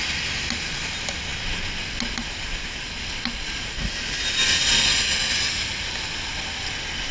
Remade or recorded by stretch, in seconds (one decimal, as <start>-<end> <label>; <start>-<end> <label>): 0.0-7.1 recorded